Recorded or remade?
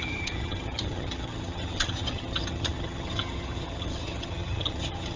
remade